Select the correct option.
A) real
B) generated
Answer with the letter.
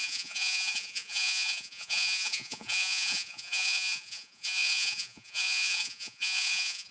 B